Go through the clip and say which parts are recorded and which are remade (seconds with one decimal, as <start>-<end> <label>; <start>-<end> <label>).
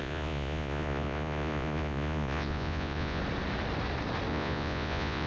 0.0-3.2 remade; 3.2-4.3 recorded; 4.3-5.3 remade